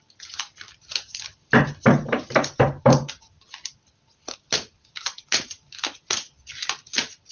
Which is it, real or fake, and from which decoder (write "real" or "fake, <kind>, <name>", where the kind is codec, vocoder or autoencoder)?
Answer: real